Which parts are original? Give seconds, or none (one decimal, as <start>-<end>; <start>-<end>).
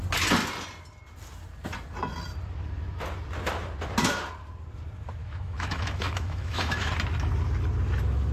0.0-5.2; 6.9-8.3